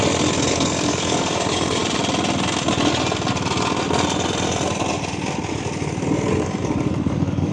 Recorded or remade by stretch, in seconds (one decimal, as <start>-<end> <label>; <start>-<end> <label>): 0.0-0.5 recorded; 0.5-1.8 remade; 1.8-6.3 recorded; 6.3-7.5 remade